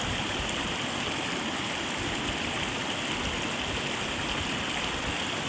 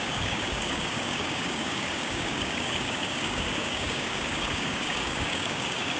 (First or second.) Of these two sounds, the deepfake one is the second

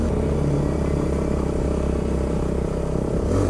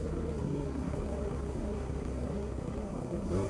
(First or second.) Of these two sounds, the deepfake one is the second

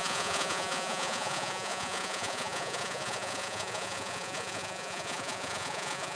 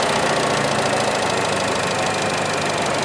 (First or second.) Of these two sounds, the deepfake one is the first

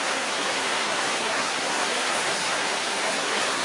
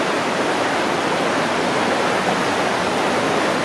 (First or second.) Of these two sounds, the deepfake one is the first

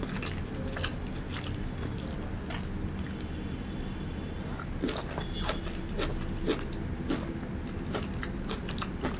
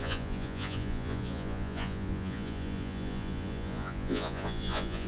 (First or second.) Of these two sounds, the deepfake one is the second